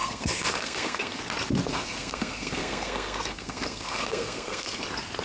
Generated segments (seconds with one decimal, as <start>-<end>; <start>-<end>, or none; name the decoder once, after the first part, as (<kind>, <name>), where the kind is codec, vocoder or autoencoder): 0.0-1.2 (codec, SNAC); 1.7-4.8